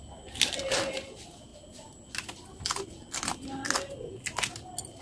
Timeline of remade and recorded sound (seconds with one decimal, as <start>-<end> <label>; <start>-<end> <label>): 0.0-5.0 recorded